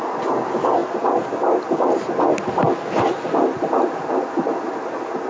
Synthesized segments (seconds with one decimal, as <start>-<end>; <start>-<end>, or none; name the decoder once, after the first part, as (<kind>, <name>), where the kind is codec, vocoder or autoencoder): none